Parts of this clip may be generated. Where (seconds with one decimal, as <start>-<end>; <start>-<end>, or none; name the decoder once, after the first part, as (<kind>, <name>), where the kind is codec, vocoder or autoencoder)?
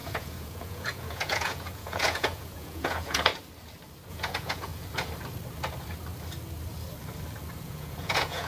0.0-3.3 (vocoder, Vocos); 4.1-4.7; 7.6-8.5